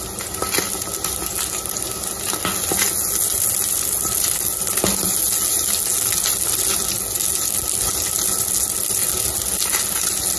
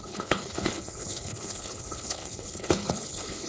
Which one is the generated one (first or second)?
second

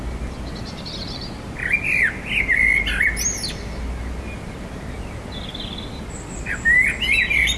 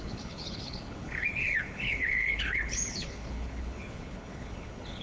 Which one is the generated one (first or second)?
second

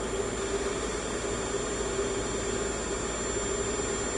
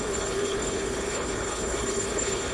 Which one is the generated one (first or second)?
second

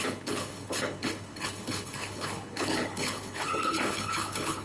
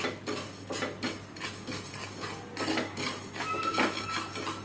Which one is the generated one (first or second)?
first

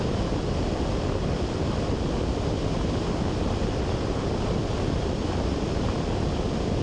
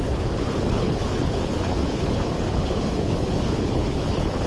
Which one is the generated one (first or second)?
second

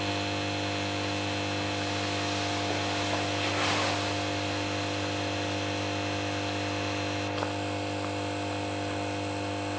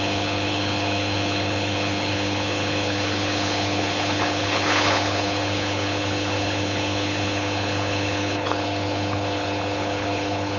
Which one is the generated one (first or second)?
second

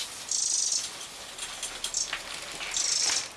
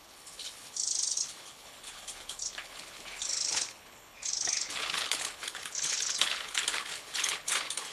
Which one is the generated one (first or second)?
second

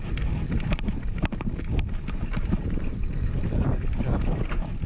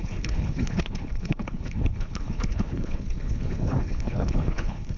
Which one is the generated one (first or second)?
second